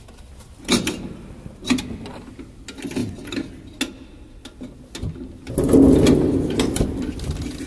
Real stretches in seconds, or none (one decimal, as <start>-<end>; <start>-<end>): 0.0-7.7